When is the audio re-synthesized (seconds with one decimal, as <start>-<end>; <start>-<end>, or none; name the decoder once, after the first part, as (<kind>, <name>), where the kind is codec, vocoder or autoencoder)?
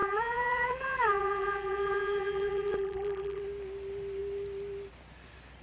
0.0-3.4 (vocoder, BigVGAN v2)